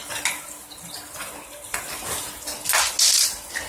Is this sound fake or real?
real